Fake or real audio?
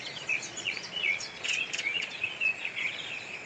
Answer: fake